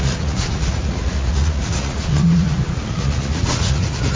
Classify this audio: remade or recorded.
remade